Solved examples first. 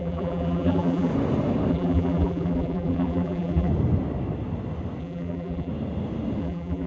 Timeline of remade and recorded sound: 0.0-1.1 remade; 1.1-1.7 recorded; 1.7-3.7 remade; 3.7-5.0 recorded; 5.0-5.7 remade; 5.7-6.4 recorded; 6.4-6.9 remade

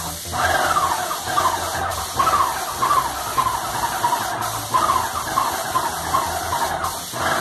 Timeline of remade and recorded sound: 0.0-7.4 recorded

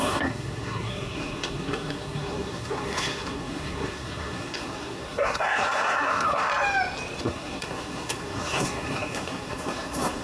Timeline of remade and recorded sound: 0.0-6.5 remade; 6.5-7.2 recorded; 7.2-10.2 remade

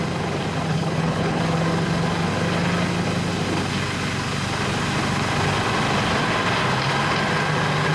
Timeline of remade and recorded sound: 0.0-0.7 recorded; 0.7-1.4 remade; 1.4-7.9 recorded

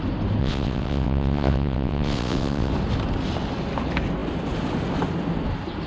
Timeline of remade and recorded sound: 0.0-0.4 recorded; 0.4-2.7 remade; 2.7-5.9 recorded

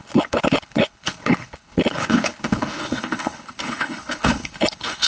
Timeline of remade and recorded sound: 0.0-5.1 remade

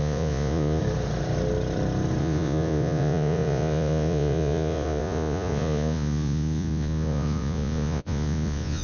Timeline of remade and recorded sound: 0.0-0.8 remade; 0.8-2.2 recorded; 2.2-8.8 remade